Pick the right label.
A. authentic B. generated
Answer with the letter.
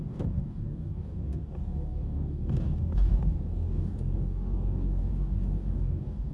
B